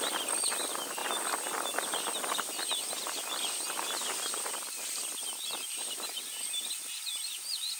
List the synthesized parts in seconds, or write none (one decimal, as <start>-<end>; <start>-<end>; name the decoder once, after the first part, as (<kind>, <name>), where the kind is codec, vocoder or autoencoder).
none